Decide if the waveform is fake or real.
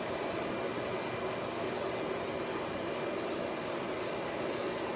real